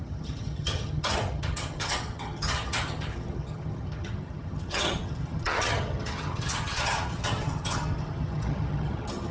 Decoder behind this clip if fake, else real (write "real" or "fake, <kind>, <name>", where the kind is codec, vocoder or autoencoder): fake, vocoder, HiFi-GAN